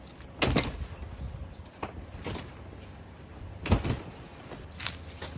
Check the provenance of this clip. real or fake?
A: real